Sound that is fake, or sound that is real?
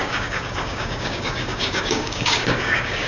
fake